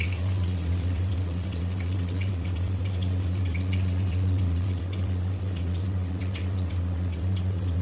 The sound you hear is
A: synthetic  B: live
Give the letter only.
A